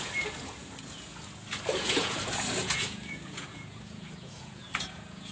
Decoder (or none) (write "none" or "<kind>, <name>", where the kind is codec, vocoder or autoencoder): vocoder, Vocos